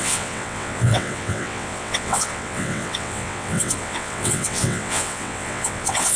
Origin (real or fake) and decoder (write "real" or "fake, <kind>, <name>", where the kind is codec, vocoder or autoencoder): fake, vocoder, WaveNeXt